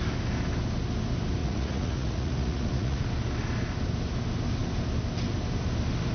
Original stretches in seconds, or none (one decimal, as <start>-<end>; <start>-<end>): 0.0-1.4; 3.0-6.1